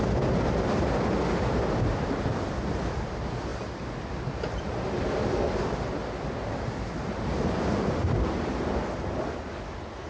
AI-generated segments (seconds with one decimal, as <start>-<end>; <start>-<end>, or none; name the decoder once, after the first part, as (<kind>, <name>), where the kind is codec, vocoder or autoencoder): none